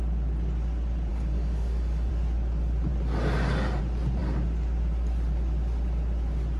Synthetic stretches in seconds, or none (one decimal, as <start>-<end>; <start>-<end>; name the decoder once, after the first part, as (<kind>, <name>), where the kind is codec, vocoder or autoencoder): 1.1-2.1 (codec, DAC)